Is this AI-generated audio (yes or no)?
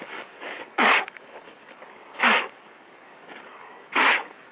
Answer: yes